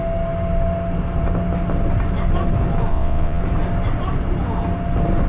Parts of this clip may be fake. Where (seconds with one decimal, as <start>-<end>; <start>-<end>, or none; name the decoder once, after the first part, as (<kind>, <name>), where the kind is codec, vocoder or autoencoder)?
2.9-3.4 (vocoder, WaveNeXt)